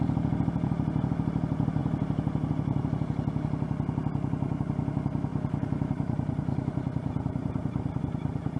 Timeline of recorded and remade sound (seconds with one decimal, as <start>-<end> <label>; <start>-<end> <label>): 0.0-5.3 recorded; 5.3-8.0 remade; 8.0-8.6 recorded